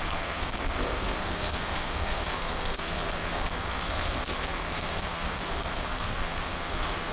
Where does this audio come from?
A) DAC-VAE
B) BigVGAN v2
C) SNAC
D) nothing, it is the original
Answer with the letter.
C